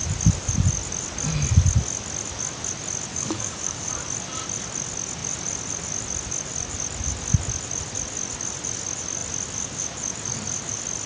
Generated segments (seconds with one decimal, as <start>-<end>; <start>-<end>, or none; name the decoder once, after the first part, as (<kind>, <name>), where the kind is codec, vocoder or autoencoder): 3.1-3.9 (codec, DAC)